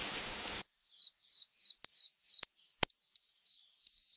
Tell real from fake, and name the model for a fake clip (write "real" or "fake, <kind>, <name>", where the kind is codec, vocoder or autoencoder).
real